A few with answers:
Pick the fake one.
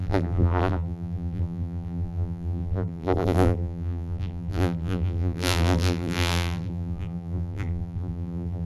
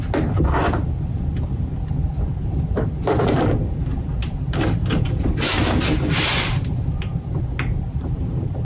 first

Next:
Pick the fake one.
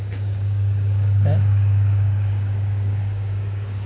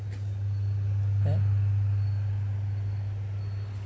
first